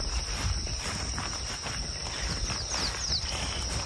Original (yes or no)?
yes